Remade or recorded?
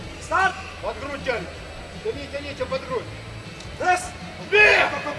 recorded